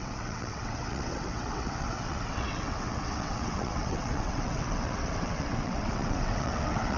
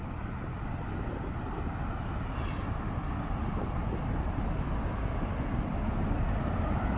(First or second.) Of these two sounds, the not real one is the first